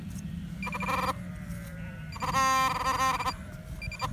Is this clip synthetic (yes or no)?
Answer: no